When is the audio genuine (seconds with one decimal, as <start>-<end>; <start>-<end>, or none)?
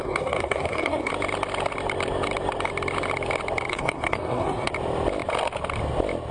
1.1-3.7; 4.7-6.3